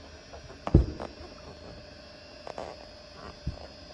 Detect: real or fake real